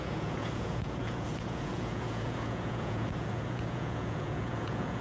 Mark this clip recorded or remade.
remade